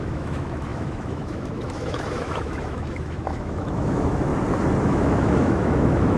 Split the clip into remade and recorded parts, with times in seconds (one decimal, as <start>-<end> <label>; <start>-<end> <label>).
0.0-4.3 remade; 4.3-4.8 recorded; 4.8-6.2 remade